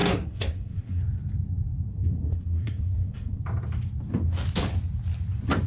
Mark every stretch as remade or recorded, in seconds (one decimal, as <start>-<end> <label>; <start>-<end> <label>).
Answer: 0.0-1.0 remade; 1.0-1.9 recorded; 1.9-3.4 remade; 3.4-5.7 recorded